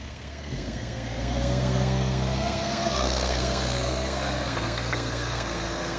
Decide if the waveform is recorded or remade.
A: remade